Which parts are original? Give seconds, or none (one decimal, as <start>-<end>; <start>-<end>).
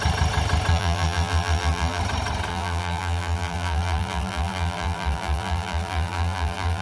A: 0.0-0.7; 2.0-2.5